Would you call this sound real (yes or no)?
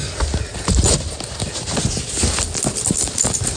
yes